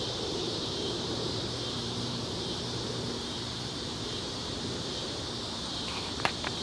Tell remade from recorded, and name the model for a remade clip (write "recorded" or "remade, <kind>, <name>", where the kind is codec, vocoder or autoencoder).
remade, vocoder, BigVGAN v2